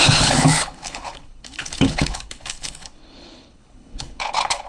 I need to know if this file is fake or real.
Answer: fake